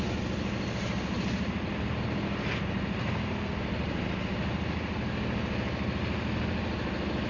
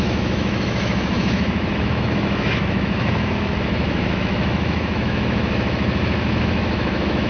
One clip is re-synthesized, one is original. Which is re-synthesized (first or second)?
second